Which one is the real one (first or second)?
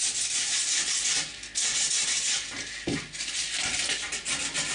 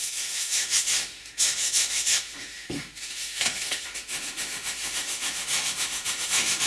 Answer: first